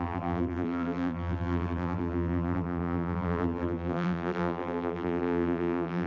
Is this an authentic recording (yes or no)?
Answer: no